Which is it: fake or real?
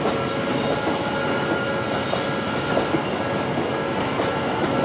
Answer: real